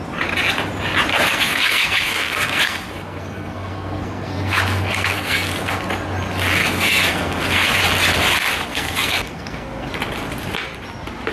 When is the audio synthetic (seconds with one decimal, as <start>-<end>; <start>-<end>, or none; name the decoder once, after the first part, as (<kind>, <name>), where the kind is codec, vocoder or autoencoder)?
1.1-5.8 (codec, SNAC); 6.6-7.8; 8.7-9.9